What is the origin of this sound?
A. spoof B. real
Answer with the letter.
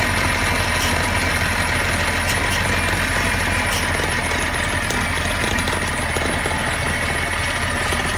B